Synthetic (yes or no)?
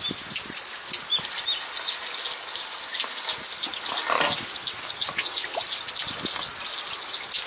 no